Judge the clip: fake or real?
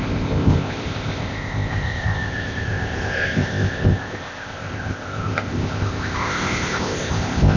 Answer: fake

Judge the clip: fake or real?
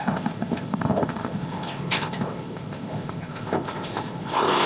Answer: fake